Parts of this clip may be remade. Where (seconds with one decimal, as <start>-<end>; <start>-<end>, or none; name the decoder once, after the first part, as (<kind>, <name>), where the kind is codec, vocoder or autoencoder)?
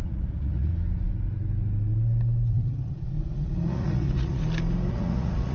0.0-0.7 (vocoder, Vocos); 2.5-4.4; 4.9-5.5